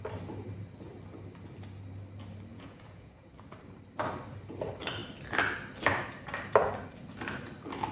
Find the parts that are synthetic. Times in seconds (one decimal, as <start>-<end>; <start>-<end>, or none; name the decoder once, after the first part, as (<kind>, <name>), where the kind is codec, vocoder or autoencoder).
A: 2.5-3.3 (vocoder, Vocos)